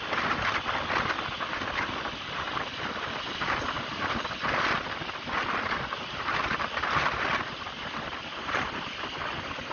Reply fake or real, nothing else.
real